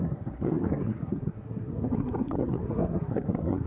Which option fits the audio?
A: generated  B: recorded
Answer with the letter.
A